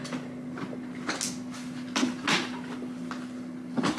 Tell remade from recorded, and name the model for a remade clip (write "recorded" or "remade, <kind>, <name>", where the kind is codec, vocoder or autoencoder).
recorded